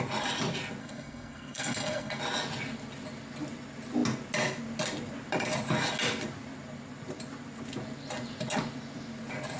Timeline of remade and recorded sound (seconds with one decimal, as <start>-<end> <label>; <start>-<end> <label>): 0.0-0.8 recorded; 0.8-2.2 remade; 2.2-9.6 recorded